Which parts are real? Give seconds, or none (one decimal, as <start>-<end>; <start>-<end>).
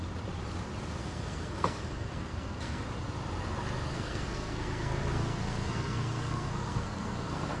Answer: 0.0-1.0; 2.8-3.9